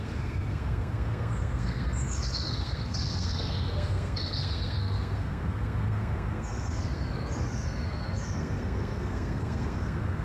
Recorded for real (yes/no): no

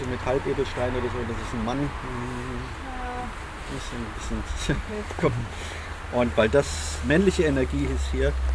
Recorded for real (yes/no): yes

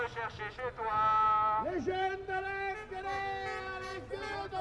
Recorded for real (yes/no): yes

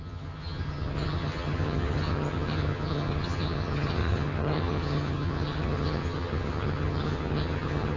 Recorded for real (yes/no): no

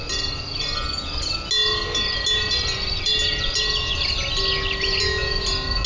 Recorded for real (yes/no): yes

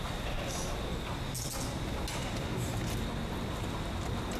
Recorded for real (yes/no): yes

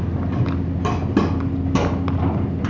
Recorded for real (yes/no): yes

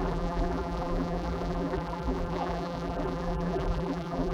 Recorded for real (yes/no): no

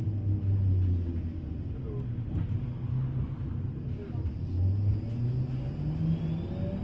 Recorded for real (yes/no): yes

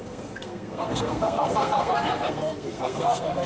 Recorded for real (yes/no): no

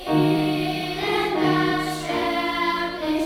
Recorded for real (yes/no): no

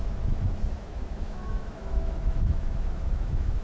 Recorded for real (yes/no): no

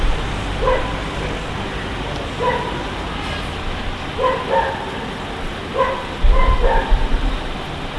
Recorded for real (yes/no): yes